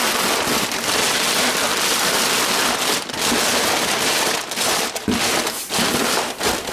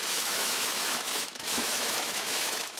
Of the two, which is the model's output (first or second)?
second